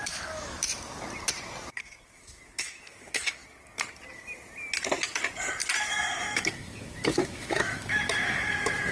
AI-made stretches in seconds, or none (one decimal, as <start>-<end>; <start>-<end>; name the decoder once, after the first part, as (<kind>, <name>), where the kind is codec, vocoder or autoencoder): 0.0-0.6 (autoencoder, DAC-VAE); 1.8-3.4; 5.8-8.9